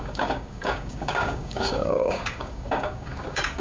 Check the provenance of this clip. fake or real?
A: fake